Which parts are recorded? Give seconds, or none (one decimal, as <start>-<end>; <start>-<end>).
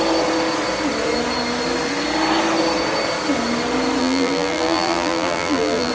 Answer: 0.0-4.0